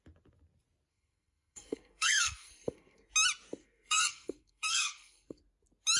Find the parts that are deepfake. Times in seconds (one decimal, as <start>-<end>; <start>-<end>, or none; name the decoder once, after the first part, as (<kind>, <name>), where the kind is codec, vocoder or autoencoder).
0.9-3.1 (codec, SNAC); 3.6-5.4